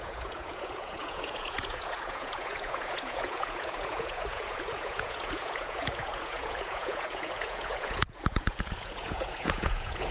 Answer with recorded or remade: remade